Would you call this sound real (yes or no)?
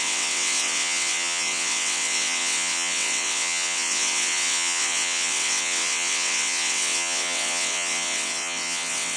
no